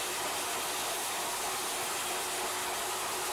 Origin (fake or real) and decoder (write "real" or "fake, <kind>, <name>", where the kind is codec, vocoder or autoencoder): real